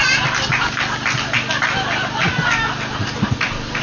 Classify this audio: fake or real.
real